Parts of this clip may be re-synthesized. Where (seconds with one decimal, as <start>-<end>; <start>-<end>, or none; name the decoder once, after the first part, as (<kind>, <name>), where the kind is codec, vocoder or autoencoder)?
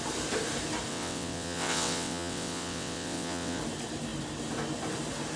0.9-3.6 (vocoder, WaveNeXt)